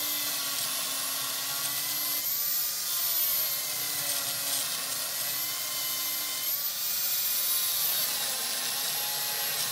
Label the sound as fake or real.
real